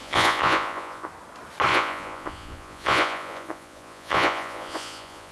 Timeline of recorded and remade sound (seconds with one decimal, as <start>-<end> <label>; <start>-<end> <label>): 0.0-1.1 remade; 1.1-1.7 recorded; 1.7-5.3 remade